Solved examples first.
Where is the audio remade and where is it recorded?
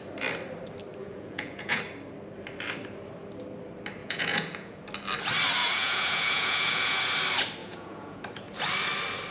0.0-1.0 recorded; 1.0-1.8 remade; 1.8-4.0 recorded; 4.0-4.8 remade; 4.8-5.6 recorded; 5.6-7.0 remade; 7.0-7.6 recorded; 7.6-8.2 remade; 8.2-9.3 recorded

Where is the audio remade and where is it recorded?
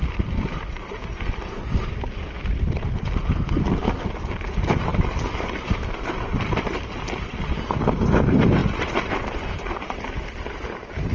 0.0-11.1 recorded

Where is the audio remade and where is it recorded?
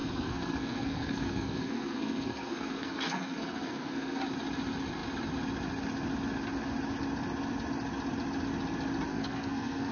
0.0-4.2 remade; 4.2-9.1 recorded; 9.1-9.9 remade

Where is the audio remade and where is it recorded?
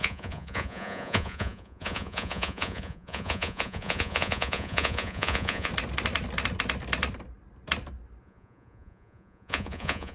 0.0-5.7 remade; 5.7-8.2 recorded; 8.2-10.1 remade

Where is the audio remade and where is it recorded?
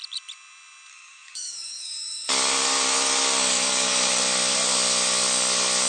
0.0-0.9 recorded; 0.9-4.2 remade; 4.2-5.9 recorded